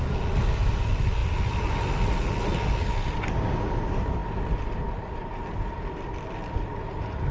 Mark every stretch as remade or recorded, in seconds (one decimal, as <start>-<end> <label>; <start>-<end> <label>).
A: 0.0-7.3 recorded